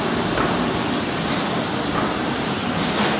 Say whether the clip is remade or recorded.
recorded